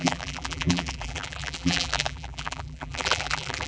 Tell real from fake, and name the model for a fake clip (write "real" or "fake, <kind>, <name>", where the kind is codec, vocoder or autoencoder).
fake, vocoder, BigVGAN v2